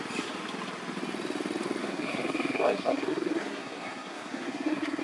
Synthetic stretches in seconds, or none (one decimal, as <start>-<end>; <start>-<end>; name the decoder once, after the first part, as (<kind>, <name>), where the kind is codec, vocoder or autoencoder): 1.8-5.0 (codec, SNAC)

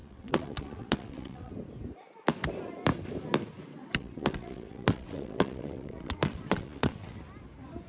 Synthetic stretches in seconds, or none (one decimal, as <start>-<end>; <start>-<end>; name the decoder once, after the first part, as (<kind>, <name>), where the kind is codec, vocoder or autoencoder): 0.0-1.5 (vocoder, WaveNeXt); 3.7-7.2

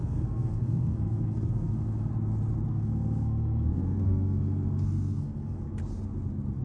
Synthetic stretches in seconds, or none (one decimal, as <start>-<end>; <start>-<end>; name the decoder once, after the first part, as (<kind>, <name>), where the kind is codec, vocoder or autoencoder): 0.0-2.1 (codec, SNAC); 2.7-5.8

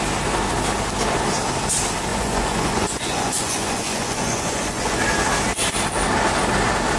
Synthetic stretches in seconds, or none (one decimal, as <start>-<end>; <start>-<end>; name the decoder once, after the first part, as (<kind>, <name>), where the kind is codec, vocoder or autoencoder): 2.1-5.0 (vocoder, Vocos)

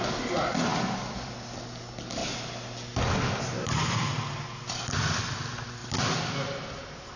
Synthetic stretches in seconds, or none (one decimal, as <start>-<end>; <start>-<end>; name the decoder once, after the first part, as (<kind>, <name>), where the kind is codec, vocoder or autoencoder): 0.7-1.3 (vocoder, BigVGAN v2)

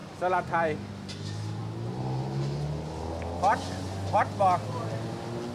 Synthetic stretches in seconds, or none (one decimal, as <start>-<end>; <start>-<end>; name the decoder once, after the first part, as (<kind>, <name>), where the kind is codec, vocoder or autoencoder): none